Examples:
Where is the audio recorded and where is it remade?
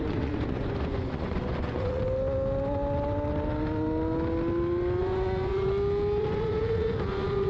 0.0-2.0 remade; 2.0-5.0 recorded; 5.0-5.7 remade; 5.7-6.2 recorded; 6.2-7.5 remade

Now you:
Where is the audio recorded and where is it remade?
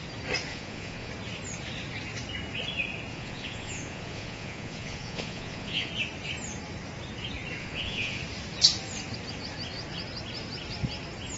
0.0-0.5 recorded; 0.5-1.1 remade; 1.1-3.1 recorded; 3.1-5.9 remade; 5.9-7.6 recorded; 7.6-8.2 remade; 8.2-11.4 recorded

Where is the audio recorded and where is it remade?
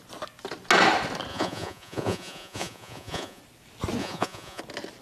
0.0-1.3 recorded; 1.3-3.4 remade; 3.4-4.0 recorded; 4.0-4.6 remade; 4.6-5.0 recorded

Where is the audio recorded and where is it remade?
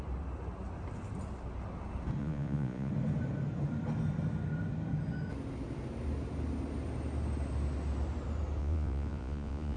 0.0-2.2 recorded; 2.2-2.9 remade; 2.9-8.6 recorded; 8.6-9.8 remade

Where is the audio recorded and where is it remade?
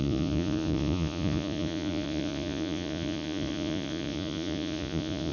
0.0-5.3 remade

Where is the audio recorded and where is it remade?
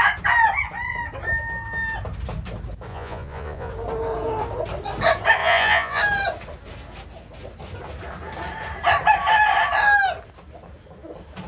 0.0-2.9 recorded; 2.9-3.7 remade; 3.7-5.4 recorded; 5.4-6.0 remade; 6.0-11.5 recorded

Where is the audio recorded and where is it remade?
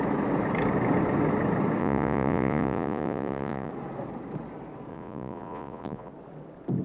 0.0-1.8 recorded; 1.8-3.7 remade; 3.7-4.9 recorded; 4.9-6.1 remade; 6.1-6.8 recorded